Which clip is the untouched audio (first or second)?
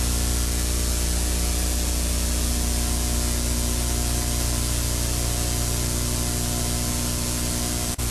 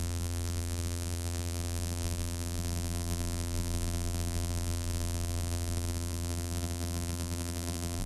first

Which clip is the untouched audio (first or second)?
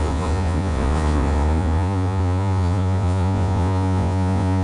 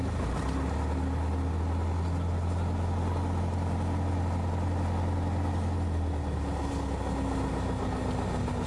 second